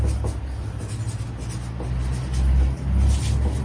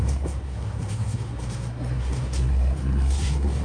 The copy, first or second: second